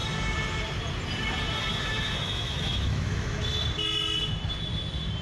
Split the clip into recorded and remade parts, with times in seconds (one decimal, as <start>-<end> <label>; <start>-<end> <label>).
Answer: 0.0-1.7 recorded; 1.7-3.4 remade; 3.4-5.2 recorded